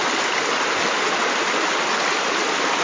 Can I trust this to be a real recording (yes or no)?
yes